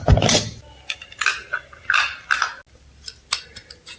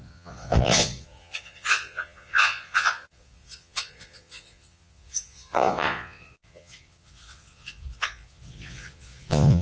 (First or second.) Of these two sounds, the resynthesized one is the second